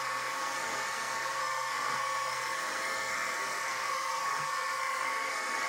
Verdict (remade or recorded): remade